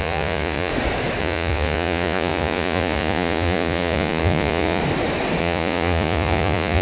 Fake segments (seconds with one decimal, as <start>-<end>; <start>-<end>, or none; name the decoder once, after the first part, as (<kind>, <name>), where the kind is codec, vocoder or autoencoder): 0.0-0.7 (vocoder, Vocos); 1.2-4.8; 5.4-6.8